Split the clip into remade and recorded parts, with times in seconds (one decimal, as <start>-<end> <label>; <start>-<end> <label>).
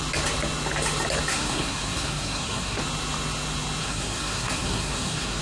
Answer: 0.0-1.3 recorded; 1.3-2.8 remade; 2.8-3.8 recorded; 3.8-5.4 remade